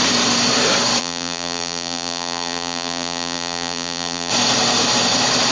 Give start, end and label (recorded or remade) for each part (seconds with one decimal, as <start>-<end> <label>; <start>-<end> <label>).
0.0-1.0 recorded; 1.0-4.3 remade; 4.3-5.5 recorded